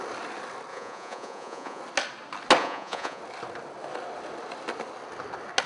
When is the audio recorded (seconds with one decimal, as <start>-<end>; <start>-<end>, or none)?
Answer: 0.0-0.7; 1.8-2.6; 3.2-5.7